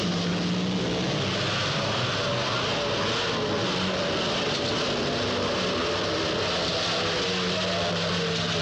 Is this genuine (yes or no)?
yes